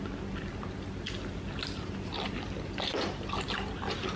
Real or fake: real